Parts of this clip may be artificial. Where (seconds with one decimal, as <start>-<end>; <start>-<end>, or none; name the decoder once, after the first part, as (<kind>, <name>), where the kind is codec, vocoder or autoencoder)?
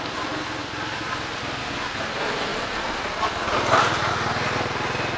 0.6-1.6 (vocoder, BigVGAN v2); 2.5-4.1